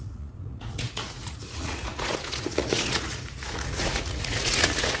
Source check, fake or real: fake